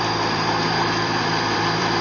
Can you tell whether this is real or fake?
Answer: fake